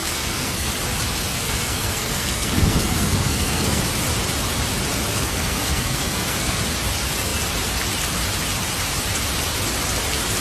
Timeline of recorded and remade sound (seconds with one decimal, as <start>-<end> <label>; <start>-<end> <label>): 0.0-0.7 remade; 0.7-1.3 recorded; 1.3-3.8 remade; 3.8-5.1 recorded; 5.1-6.6 remade; 6.6-10.4 recorded